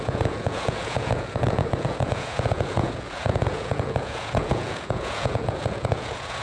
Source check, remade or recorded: remade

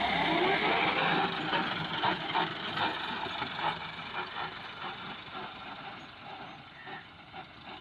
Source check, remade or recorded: recorded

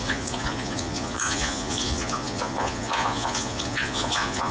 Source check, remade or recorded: remade